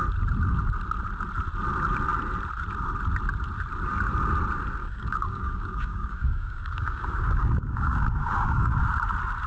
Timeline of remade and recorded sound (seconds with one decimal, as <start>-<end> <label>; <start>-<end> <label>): 0.0-4.8 recorded; 4.8-8.8 remade; 8.8-9.5 recorded